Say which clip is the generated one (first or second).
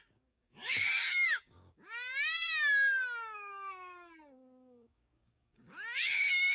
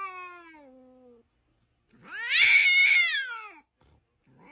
first